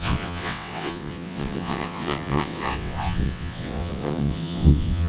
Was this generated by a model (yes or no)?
yes